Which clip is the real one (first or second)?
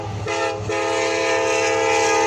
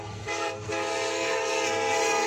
first